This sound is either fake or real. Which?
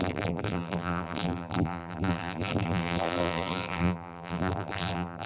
fake